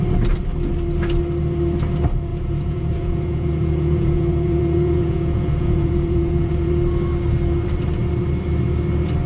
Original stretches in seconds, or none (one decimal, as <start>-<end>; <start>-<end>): 0.0-2.3; 6.7-9.3